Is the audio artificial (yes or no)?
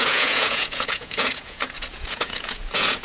yes